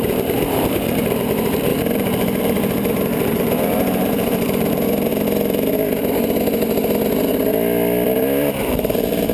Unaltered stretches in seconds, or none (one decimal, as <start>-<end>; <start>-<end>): 5.1-8.6